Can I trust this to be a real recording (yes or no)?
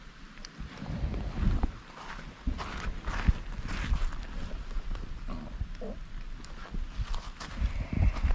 yes